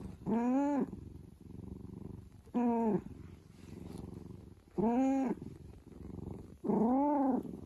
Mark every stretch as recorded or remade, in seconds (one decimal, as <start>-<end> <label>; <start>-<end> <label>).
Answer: 0.0-7.7 recorded